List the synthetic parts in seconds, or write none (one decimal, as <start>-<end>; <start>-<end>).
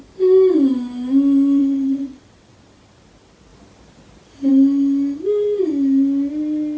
1.6-3.0